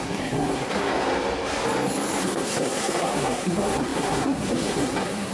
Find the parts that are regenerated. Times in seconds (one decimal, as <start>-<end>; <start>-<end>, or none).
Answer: 0.0-0.9; 2.2-5.3